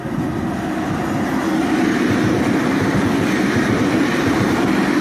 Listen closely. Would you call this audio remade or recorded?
recorded